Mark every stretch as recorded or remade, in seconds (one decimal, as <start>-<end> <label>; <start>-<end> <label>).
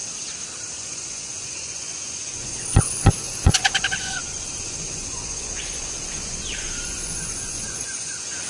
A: 0.0-0.7 recorded; 0.7-8.5 remade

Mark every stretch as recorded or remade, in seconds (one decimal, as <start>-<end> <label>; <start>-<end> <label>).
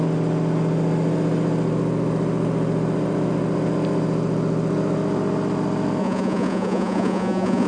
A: 0.0-6.0 recorded; 6.0-7.7 remade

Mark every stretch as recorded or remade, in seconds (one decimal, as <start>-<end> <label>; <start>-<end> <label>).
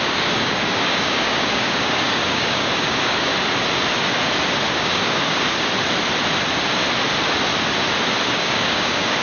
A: 0.0-3.3 remade; 3.3-4.7 recorded; 4.7-5.7 remade; 5.7-8.2 recorded; 8.2-9.2 remade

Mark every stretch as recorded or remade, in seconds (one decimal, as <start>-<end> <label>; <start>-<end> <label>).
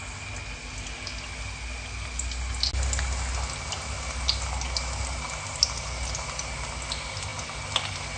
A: 0.0-8.2 recorded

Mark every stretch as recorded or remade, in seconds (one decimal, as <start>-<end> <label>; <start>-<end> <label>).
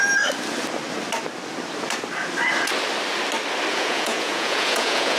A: 0.0-3.7 recorded; 3.7-5.2 remade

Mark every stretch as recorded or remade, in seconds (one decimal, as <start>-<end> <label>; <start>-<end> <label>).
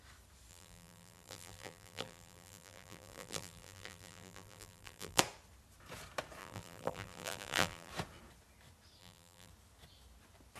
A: 0.0-0.5 recorded; 0.5-5.2 remade; 5.2-6.4 recorded; 6.4-7.9 remade; 7.9-9.0 recorded; 9.0-9.5 remade; 9.5-10.6 recorded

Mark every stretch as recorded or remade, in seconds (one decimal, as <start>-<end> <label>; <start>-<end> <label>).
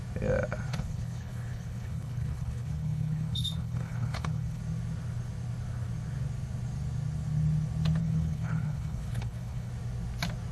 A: 0.0-0.7 recorded; 0.7-4.6 remade; 4.6-8.0 recorded; 8.0-9.7 remade; 9.7-10.5 recorded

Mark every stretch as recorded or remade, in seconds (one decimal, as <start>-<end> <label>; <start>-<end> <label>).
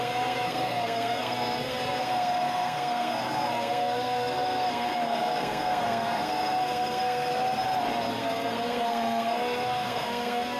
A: 0.0-7.3 remade; 7.3-8.2 recorded; 8.2-10.6 remade